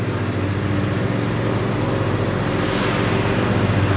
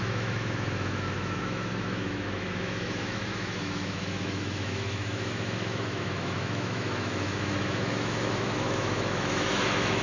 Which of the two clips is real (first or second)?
first